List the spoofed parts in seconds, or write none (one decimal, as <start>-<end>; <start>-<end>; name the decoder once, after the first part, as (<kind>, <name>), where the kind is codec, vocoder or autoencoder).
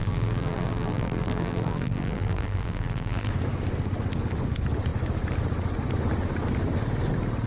0.0-3.3 (vocoder, BigVGAN v2)